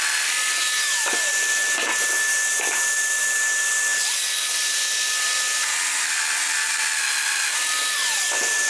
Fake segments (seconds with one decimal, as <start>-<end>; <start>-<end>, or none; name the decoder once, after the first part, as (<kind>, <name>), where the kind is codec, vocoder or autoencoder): none